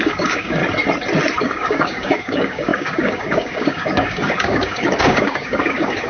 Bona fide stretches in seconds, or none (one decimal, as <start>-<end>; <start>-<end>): 0.6-1.4